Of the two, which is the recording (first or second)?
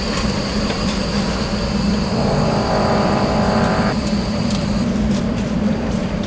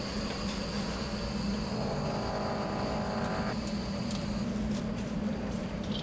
second